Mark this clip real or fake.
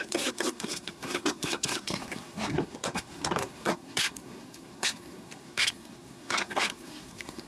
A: fake